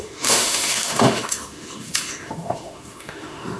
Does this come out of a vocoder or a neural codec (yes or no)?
yes